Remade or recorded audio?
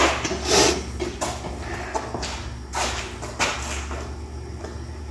recorded